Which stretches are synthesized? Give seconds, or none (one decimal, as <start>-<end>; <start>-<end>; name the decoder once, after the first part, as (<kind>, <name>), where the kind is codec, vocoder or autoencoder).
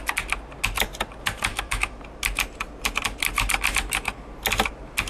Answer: 1.5-2.0 (autoencoder, DAC-VAE)